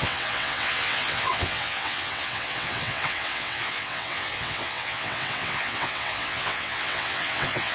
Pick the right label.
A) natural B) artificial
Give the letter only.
B